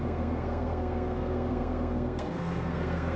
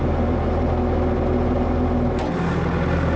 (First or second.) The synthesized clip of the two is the first